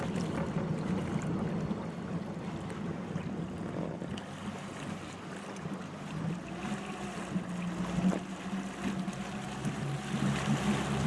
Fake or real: real